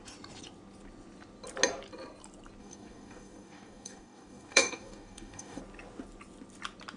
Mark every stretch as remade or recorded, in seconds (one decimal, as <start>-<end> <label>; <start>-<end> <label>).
0.0-2.6 recorded; 2.6-5.6 remade; 5.6-7.0 recorded